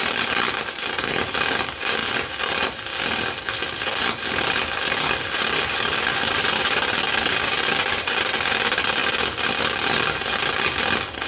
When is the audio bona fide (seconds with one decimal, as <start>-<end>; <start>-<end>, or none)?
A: 2.0-6.1; 9.0-10.9